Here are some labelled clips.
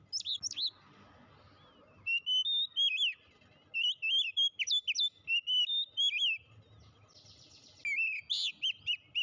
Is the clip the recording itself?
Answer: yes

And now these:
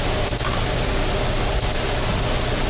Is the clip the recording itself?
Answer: yes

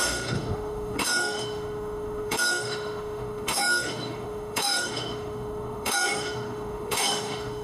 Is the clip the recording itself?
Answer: no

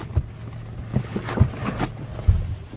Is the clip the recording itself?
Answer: yes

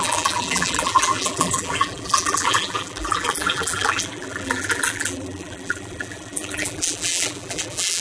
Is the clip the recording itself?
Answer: no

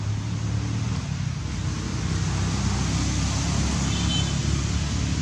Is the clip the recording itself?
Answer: yes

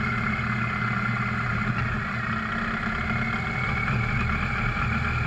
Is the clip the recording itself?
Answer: yes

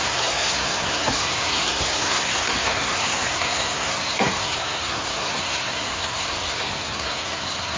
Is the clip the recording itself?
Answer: no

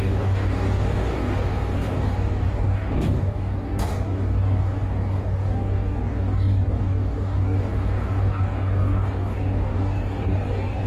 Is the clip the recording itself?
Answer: no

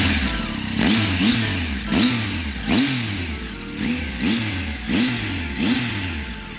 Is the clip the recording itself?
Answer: yes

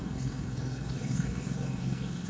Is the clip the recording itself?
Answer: no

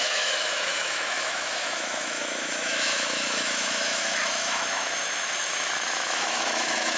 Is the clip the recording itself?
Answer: no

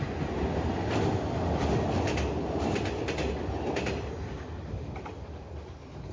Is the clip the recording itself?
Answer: yes